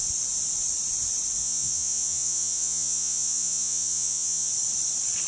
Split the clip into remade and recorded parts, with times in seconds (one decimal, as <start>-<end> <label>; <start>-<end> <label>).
0.0-1.4 recorded; 1.4-4.5 remade; 4.5-5.3 recorded